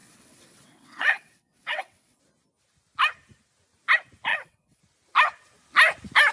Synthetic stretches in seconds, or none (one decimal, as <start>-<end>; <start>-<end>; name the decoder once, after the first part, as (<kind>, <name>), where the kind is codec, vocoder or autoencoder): 0.0-2.2 (vocoder, WaveNeXt); 4.3-4.8